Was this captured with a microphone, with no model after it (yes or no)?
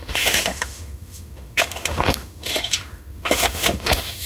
no